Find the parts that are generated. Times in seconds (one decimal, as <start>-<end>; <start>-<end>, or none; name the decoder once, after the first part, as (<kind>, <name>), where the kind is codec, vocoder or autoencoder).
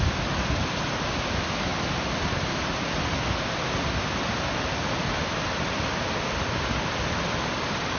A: none